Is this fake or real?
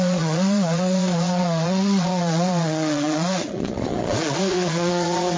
fake